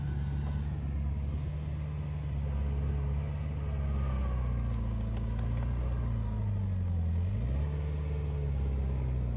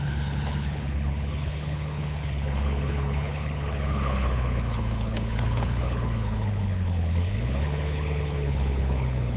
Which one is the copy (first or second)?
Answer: second